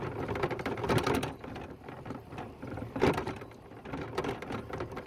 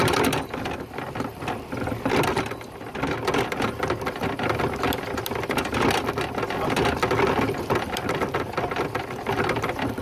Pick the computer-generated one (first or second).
first